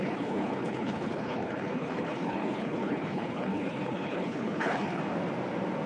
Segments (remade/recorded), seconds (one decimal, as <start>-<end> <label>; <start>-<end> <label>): 0.0-5.0 remade; 5.0-5.9 recorded

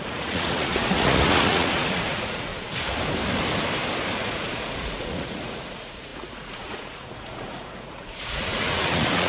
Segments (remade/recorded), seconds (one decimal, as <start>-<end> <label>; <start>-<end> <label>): 0.0-2.5 remade; 2.5-4.2 recorded; 4.2-9.3 remade

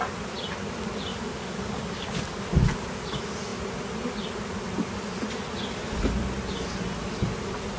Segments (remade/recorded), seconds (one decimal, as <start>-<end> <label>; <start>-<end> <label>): 0.0-1.1 recorded; 1.1-2.3 remade; 2.3-7.8 recorded